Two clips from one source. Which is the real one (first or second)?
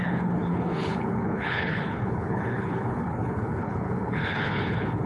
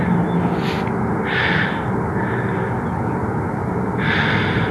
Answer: second